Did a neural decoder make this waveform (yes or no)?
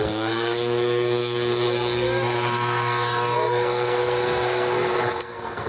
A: yes